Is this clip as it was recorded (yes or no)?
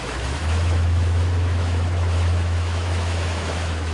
no